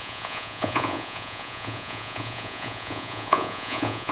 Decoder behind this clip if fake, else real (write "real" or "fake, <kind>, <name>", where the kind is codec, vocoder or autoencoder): fake, vocoder, Vocos